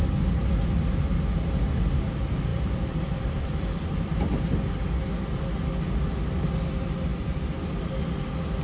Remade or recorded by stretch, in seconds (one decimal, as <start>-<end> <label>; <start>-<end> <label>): 0.0-2.5 recorded; 2.5-4.5 remade; 4.5-7.1 recorded; 7.1-7.8 remade; 7.8-8.6 recorded